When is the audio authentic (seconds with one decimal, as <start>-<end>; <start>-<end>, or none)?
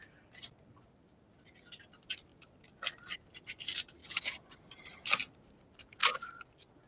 0.0-4.0; 5.0-6.9